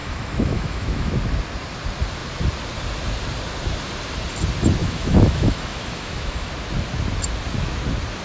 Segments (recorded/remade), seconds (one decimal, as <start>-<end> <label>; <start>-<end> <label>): 0.0-1.1 remade; 1.1-4.8 recorded; 4.8-6.5 remade; 6.5-8.2 recorded